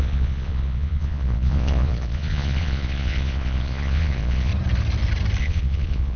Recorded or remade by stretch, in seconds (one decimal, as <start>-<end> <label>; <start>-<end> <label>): 0.0-4.5 remade; 4.5-5.4 recorded; 5.4-6.2 remade